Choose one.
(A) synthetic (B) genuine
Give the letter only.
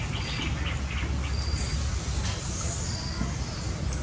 B